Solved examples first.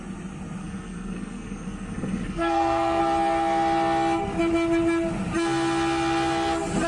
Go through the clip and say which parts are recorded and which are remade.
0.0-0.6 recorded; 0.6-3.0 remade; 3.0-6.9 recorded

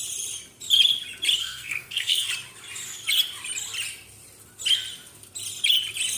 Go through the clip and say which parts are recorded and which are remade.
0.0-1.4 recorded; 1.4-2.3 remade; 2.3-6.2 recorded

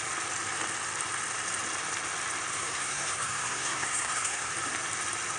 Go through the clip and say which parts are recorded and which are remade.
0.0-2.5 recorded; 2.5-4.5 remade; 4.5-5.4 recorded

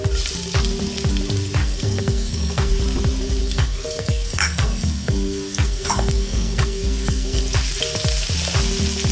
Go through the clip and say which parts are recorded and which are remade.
0.0-1.6 recorded; 1.6-2.7 remade; 2.7-3.4 recorded; 3.4-7.4 remade; 7.4-9.1 recorded

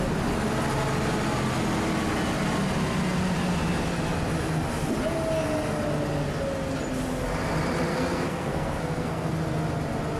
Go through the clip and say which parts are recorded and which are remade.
0.0-7.9 recorded; 7.9-9.3 remade; 9.3-10.2 recorded

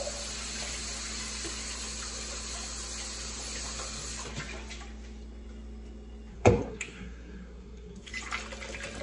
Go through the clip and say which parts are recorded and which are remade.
0.0-6.3 recorded; 6.3-8.1 remade; 8.1-9.0 recorded